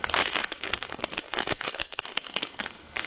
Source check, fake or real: fake